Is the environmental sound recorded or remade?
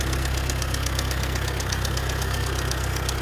remade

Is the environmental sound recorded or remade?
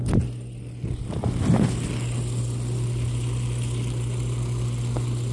recorded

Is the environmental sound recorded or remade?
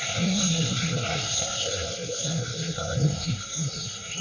remade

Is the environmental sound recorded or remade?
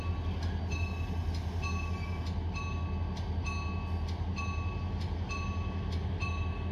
recorded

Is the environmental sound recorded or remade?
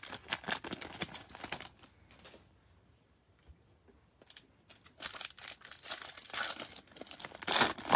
recorded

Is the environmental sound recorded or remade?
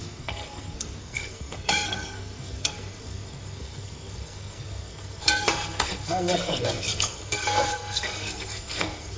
remade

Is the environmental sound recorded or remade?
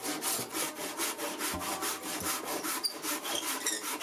recorded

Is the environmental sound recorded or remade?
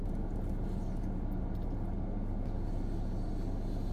recorded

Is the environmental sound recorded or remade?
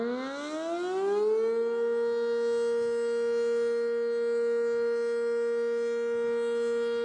recorded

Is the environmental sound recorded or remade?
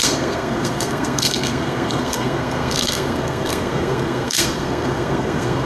remade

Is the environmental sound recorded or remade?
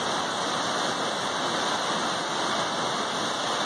recorded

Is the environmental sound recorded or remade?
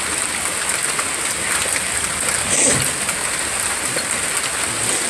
recorded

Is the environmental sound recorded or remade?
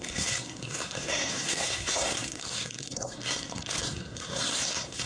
remade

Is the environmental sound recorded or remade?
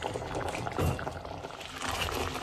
recorded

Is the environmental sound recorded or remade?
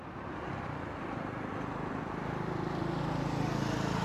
recorded